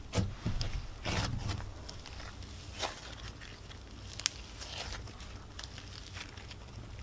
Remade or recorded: recorded